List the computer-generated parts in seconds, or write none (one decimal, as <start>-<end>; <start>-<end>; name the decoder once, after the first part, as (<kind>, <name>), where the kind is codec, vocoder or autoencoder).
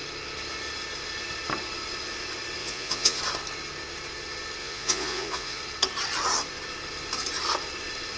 2.6-3.2 (vocoder, Vocos); 4.6-5.6